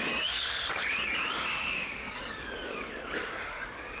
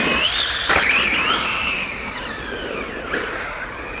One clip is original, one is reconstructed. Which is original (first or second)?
second